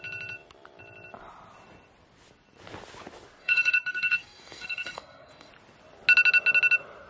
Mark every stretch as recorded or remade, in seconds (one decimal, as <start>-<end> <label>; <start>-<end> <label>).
0.0-3.4 recorded; 3.4-5.5 remade; 5.5-7.1 recorded